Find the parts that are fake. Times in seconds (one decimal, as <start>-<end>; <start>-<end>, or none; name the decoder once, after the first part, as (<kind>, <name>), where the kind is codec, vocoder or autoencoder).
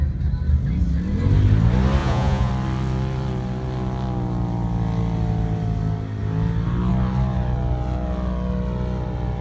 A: 2.0-2.5 (vocoder, Vocos)